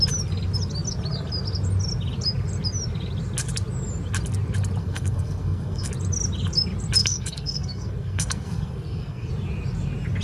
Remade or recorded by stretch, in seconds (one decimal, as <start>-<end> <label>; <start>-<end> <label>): 0.0-4.8 recorded; 4.8-5.9 remade; 5.9-7.0 recorded; 7.0-9.3 remade; 9.3-10.2 recorded